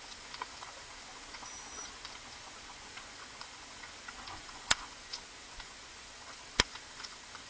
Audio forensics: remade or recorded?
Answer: remade